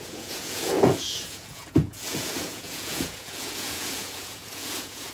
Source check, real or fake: fake